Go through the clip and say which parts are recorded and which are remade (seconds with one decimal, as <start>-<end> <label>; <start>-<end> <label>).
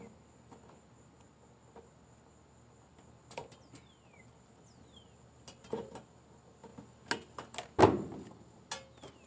0.0-9.3 recorded